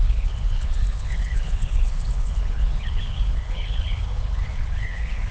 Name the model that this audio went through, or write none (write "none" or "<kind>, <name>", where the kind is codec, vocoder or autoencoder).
codec, HILCodec